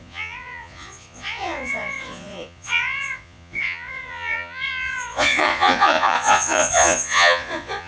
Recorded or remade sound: remade